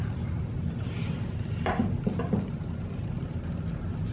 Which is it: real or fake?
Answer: real